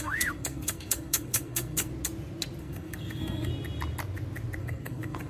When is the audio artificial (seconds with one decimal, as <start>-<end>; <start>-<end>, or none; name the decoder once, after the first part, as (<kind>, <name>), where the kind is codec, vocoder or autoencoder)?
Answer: 0.0-1.9 (codec, SNAC); 2.6-3.5; 4.6-5.3